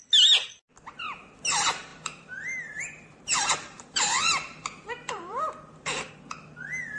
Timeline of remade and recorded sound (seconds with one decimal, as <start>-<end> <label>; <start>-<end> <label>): 0.0-1.9 recorded; 1.9-6.1 remade; 6.1-7.0 recorded